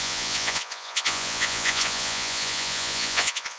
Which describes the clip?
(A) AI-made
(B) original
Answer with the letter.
A